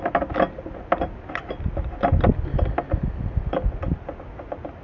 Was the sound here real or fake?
real